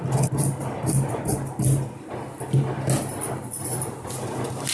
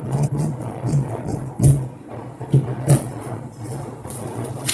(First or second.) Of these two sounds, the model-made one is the second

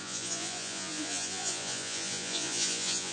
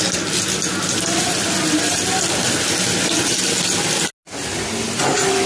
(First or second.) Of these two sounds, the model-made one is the first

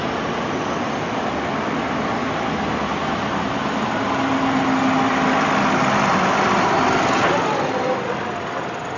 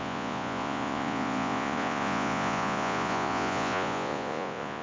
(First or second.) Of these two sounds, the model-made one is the second